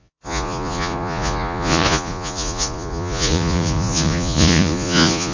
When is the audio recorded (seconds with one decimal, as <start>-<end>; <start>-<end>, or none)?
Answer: none